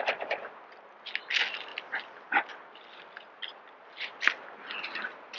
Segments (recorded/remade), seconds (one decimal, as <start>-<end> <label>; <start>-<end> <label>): 0.0-5.4 recorded